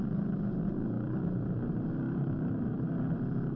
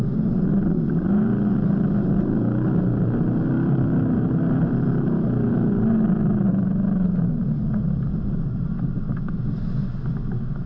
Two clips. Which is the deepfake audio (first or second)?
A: first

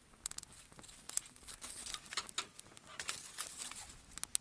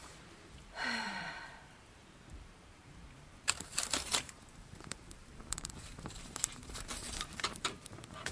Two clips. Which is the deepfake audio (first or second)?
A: second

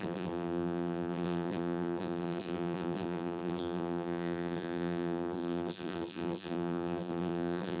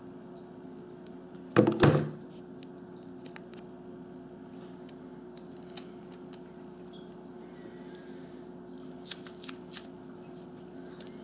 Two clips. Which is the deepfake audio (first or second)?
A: first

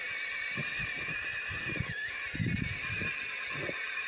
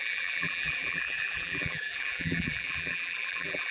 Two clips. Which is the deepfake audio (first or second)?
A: second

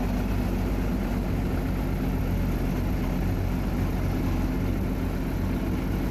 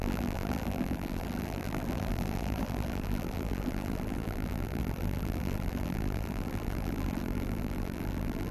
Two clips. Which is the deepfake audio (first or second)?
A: second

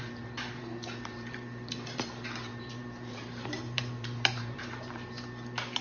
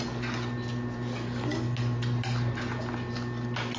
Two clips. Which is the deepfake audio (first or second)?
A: first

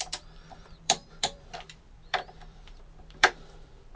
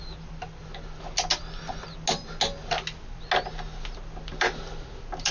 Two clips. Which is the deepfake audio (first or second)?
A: first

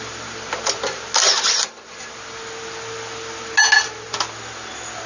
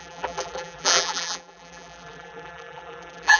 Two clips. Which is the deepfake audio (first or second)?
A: second